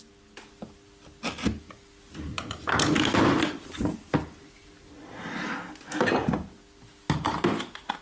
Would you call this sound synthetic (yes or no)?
no